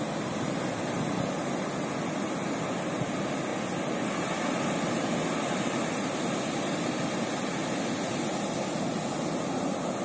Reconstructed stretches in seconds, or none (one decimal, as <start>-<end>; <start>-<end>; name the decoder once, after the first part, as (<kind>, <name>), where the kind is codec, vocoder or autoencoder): none